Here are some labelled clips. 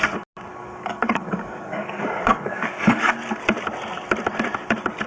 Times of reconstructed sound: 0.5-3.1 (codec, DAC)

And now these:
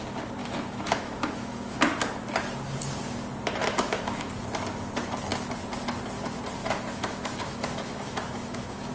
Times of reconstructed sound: 0.4-1.8 (autoencoder, DAC-VAE); 3.6-4.3; 6.6-8.9

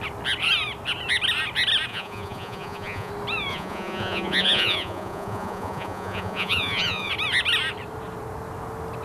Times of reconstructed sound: 1.9-3.1 (vocoder, Vocos); 3.5-7.1

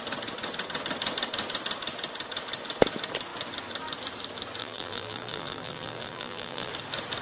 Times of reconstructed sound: 4.6-6.7 (vocoder, BigVGAN v2)

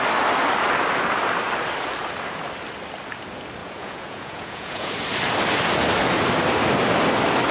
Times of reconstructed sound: 3.6-4.9 (vocoder, Vocos)